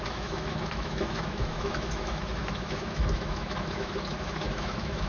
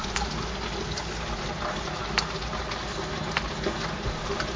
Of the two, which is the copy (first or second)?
first